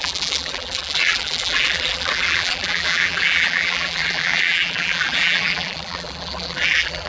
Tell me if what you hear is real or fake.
fake